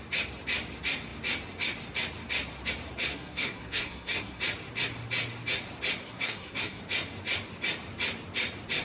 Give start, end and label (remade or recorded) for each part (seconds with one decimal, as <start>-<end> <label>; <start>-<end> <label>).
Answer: 0.0-3.1 recorded; 3.1-4.4 remade; 4.4-6.0 recorded; 6.0-6.8 remade; 6.8-8.8 recorded